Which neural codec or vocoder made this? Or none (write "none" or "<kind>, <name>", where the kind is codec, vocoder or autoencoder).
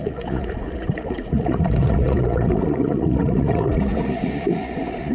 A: vocoder, Vocos